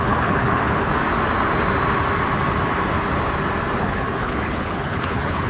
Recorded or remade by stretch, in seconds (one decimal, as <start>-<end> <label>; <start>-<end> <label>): 0.0-0.9 remade; 0.9-3.8 recorded; 3.8-5.5 remade